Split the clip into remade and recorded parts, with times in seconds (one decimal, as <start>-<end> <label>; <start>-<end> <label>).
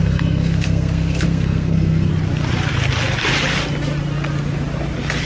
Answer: 0.0-2.1 remade; 2.1-5.3 recorded